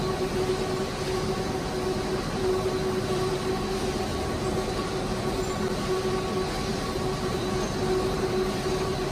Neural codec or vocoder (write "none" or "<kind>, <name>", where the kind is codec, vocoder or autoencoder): none